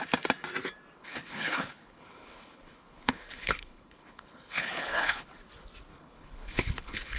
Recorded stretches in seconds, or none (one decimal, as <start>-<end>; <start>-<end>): 0.0-1.0; 5.3-5.9